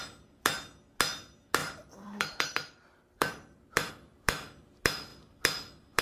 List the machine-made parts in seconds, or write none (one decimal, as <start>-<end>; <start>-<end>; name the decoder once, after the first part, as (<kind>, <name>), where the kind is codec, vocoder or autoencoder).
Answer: 1.6-3.9 (vocoder, BigVGAN v2)